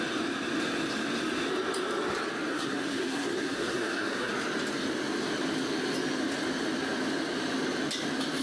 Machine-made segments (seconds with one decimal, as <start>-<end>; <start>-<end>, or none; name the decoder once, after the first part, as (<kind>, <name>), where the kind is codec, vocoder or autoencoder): 2.5-4.3 (codec, SNAC)